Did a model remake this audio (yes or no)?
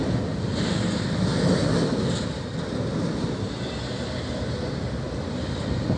no